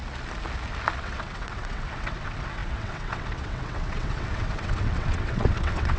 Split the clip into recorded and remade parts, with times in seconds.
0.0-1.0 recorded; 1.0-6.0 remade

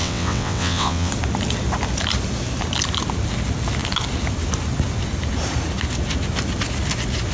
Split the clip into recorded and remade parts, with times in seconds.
0.0-1.1 remade; 1.1-7.3 recorded

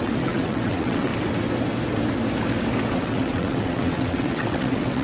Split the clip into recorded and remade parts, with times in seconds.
0.0-1.1 remade; 1.1-2.9 recorded; 2.9-5.0 remade

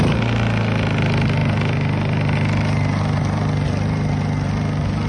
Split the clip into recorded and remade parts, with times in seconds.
0.0-5.1 recorded

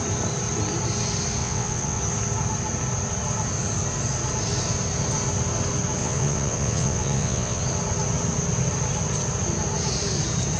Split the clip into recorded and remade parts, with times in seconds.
0.0-1.4 recorded; 1.4-2.0 remade; 2.0-6.0 recorded; 6.0-7.6 remade; 7.6-10.6 recorded

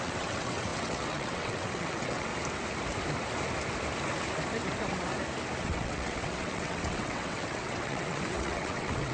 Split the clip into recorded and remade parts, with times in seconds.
0.0-2.3 remade; 2.3-5.6 recorded; 5.6-9.1 remade

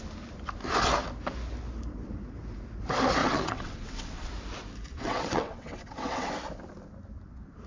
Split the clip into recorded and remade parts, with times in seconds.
0.0-3.2 recorded; 3.2-4.3 remade; 4.3-4.9 recorded; 4.9-6.3 remade; 6.3-7.7 recorded

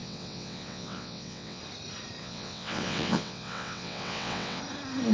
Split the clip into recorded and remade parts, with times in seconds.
0.0-1.6 remade; 1.6-2.2 recorded; 2.2-4.6 remade; 4.6-5.1 recorded